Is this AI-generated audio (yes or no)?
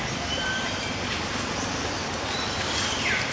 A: no